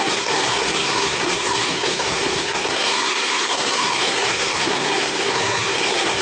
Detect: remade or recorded remade